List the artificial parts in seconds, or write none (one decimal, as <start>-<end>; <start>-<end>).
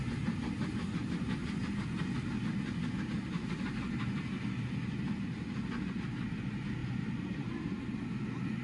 6.8-7.8